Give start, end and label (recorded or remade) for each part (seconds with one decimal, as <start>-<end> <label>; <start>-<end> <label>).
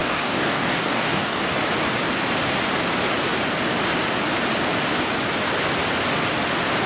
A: 0.0-1.4 remade; 1.4-6.9 recorded